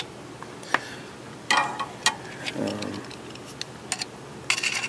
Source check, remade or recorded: recorded